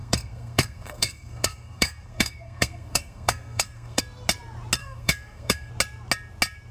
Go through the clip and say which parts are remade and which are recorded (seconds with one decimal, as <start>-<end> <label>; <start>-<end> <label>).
0.0-4.0 remade; 4.0-4.8 recorded; 4.8-5.7 remade; 5.7-6.7 recorded